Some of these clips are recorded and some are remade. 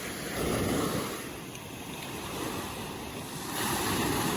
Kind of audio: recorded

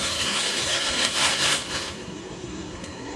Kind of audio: remade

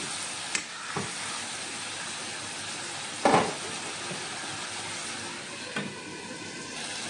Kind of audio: recorded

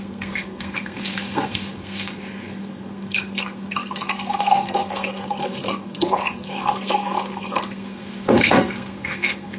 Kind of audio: remade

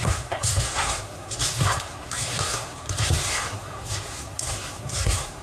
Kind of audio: remade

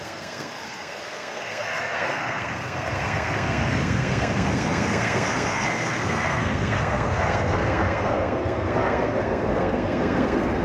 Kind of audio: remade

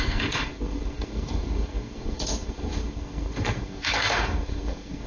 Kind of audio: remade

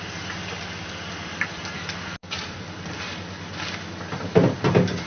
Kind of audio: recorded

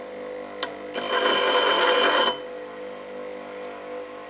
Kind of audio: recorded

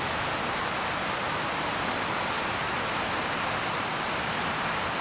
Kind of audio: recorded